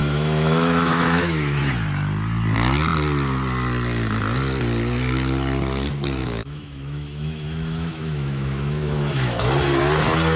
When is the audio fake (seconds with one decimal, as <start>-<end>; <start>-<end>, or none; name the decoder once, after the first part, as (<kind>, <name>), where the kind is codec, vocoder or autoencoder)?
0.0-1.6 (autoencoder, DAC-VAE); 6.2-9.5